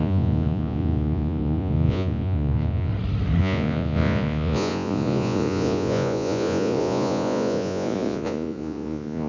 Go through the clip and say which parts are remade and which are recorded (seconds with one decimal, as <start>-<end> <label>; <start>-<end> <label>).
0.0-2.9 remade; 2.9-3.4 recorded; 3.4-9.3 remade